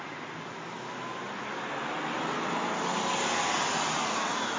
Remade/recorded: recorded